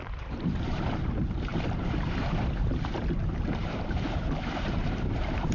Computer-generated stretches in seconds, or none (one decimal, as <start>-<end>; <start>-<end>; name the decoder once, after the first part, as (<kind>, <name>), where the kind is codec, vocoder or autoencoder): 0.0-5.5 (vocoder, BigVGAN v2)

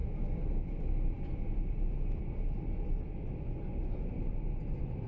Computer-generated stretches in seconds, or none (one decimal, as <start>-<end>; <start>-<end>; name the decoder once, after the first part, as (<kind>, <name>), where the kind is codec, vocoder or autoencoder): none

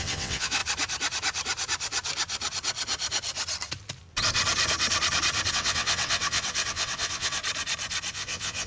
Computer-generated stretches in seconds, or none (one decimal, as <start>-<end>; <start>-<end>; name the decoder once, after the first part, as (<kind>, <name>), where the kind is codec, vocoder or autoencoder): 0.0-0.6 (vocoder, WaveNeXt); 5.5-7.4; 8.1-8.7